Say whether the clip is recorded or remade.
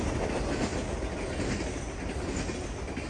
recorded